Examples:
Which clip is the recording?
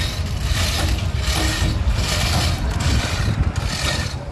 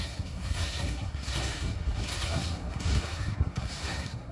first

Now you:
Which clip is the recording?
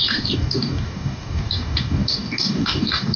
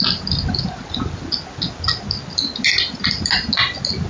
second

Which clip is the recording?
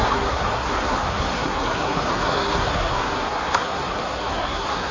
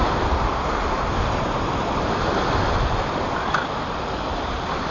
second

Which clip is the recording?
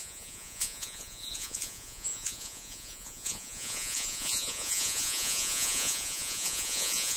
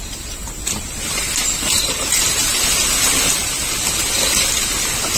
second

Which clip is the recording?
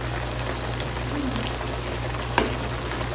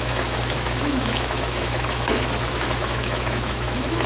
first